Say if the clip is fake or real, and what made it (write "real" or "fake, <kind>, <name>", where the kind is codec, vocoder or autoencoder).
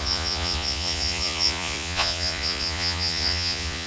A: fake, vocoder, Vocos